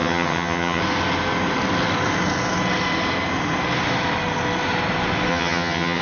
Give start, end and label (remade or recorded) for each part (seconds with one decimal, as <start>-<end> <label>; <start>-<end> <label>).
0.0-0.8 remade; 0.8-5.3 recorded; 5.3-6.0 remade